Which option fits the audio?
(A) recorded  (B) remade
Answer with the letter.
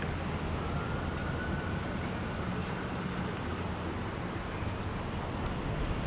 A